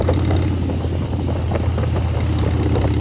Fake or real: real